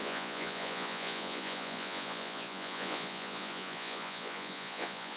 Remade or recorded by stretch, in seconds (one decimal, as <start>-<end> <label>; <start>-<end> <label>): 0.0-5.2 remade